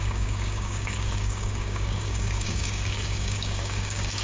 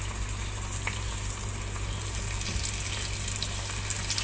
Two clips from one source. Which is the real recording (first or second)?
second